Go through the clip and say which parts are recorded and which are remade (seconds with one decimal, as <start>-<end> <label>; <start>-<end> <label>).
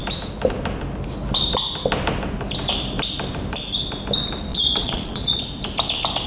0.0-4.5 recorded; 4.5-5.4 remade; 5.4-6.3 recorded